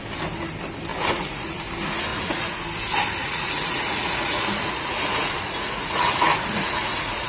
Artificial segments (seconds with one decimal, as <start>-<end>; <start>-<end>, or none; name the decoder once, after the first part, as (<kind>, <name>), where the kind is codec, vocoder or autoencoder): 0.9-1.6 (vocoder, Vocos); 2.1-2.6; 3.2-7.3